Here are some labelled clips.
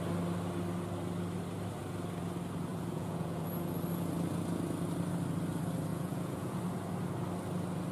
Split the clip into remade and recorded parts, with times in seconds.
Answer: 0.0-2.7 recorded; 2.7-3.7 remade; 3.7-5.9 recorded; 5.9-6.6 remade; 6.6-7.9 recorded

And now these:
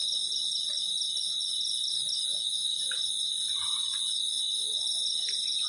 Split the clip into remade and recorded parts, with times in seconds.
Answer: 0.0-1.4 recorded; 1.4-3.2 remade; 3.2-5.7 recorded

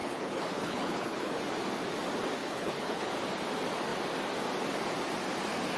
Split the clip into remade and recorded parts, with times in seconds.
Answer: 0.0-1.4 remade; 1.4-2.4 recorded; 2.4-3.1 remade; 3.1-5.8 recorded

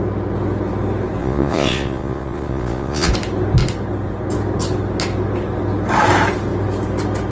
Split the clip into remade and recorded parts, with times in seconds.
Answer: 0.0-1.2 recorded; 1.2-3.1 remade; 3.1-7.3 recorded